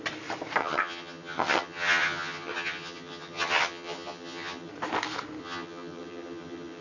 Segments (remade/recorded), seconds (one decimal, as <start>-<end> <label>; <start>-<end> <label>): 0.0-0.6 recorded; 0.6-4.7 remade; 4.7-5.4 recorded; 5.4-6.8 remade